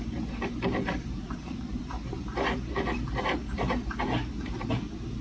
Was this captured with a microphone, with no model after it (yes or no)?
no